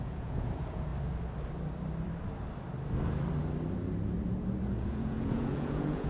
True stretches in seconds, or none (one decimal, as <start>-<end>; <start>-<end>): 0.9-4.6